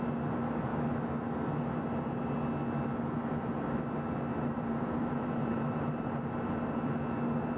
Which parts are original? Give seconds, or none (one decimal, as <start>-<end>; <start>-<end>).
0.0-4.4; 7.0-7.6